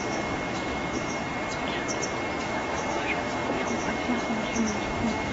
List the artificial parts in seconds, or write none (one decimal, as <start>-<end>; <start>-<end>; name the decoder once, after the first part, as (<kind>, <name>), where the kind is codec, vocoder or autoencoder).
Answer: 0.0-1.2 (autoencoder, DAC-VAE); 2.4-5.3